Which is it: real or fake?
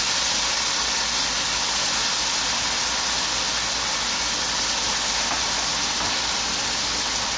real